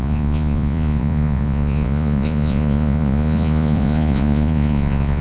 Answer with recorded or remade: remade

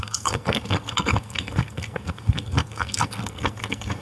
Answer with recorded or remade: remade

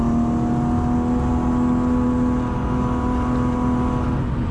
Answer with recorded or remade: recorded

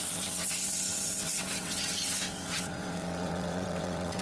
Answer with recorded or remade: remade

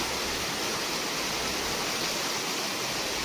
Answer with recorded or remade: recorded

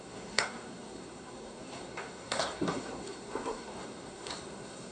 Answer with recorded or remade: remade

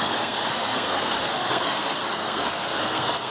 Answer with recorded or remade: remade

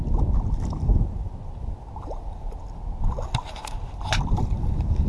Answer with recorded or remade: recorded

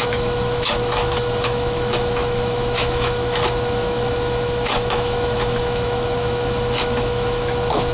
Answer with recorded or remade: remade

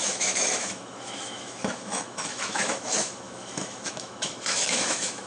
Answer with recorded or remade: remade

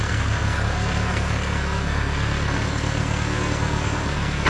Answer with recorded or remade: remade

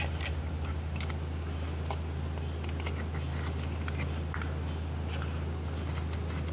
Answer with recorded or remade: recorded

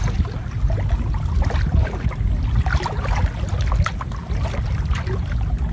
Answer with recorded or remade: recorded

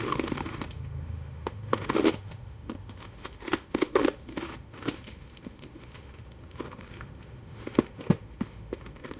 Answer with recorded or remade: remade